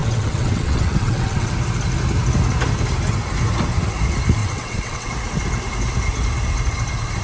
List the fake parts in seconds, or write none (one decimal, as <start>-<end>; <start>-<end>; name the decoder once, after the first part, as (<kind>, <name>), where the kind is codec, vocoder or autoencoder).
0.0-1.5 (vocoder, WaveNeXt); 4.4-5.1